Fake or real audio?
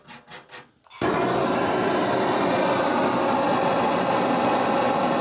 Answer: real